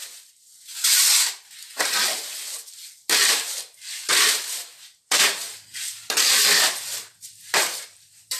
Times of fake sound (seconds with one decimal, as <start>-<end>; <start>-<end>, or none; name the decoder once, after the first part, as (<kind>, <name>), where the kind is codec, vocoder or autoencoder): 3.3-8.4 (vocoder, BigVGAN v2)